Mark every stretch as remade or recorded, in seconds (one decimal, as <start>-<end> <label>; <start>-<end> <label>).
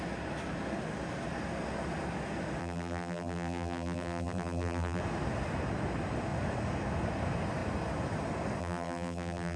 0.0-2.6 recorded; 2.6-5.0 remade; 5.0-8.6 recorded; 8.6-9.6 remade